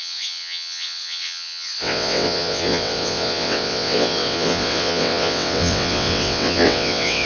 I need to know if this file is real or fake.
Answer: fake